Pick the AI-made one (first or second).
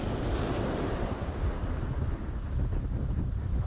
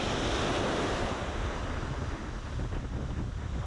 first